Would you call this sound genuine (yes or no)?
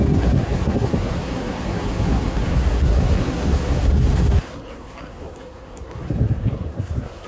no